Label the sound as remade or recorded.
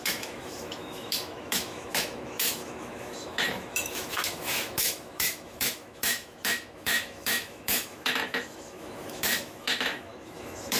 remade